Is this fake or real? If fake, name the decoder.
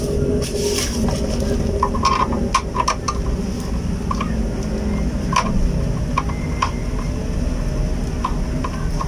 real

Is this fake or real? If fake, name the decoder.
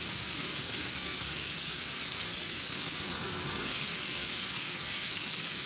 fake, codec, SNAC